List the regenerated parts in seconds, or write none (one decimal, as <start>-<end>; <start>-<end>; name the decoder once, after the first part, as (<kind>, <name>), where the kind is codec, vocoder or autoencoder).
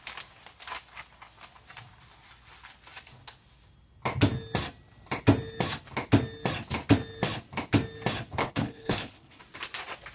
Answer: 8.4-9.4 (codec, HILCodec)